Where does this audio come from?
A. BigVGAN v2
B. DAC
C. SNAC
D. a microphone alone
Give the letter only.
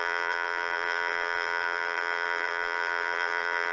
A